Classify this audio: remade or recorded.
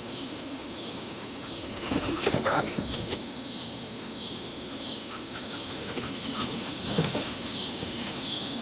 remade